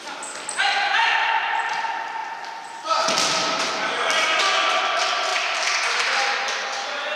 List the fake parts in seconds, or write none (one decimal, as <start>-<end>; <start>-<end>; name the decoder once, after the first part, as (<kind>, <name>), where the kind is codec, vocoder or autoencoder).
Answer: 5.3-6.5 (vocoder, BigVGAN v2)